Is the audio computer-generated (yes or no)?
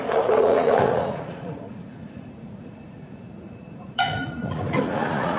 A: yes